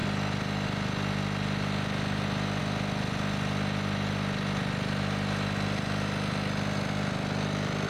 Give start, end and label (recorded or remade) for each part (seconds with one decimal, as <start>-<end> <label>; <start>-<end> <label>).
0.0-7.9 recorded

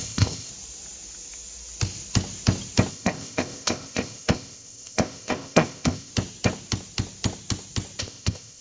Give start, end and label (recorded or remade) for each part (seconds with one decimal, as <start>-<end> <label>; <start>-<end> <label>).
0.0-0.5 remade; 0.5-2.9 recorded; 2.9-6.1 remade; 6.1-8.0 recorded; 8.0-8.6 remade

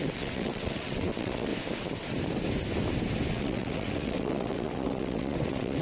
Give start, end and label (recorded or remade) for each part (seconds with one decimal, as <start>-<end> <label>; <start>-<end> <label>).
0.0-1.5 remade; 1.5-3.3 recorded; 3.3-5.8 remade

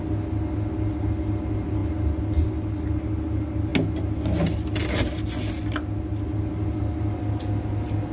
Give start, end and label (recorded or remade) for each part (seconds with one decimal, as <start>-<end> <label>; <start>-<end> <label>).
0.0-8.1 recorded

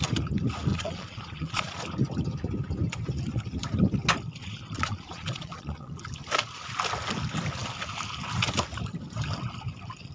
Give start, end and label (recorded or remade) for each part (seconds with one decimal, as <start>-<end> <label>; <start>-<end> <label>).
0.0-0.7 recorded; 0.7-1.8 remade; 1.8-4.4 recorded; 4.4-6.0 remade; 6.0-10.1 recorded